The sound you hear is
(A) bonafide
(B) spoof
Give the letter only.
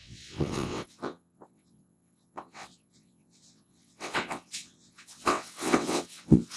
B